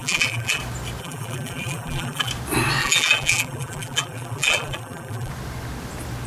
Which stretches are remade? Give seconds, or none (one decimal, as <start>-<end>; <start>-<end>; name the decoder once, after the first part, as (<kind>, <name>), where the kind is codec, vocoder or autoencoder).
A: 0.0-0.6 (vocoder, BigVGAN v2); 1.0-2.3; 2.8-5.3